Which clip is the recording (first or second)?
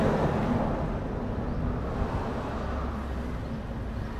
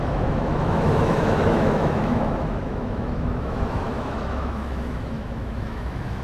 first